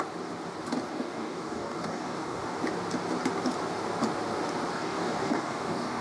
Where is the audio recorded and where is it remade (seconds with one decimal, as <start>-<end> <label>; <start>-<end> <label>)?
0.0-0.9 recorded; 0.9-2.6 remade; 2.6-4.7 recorded; 4.7-6.0 remade